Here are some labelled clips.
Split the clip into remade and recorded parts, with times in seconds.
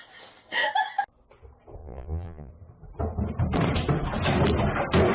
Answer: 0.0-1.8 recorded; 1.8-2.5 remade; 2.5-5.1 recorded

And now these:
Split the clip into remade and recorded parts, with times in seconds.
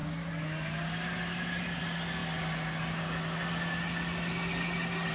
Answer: 0.0-5.1 recorded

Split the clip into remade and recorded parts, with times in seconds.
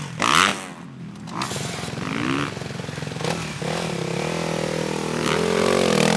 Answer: 0.0-6.2 recorded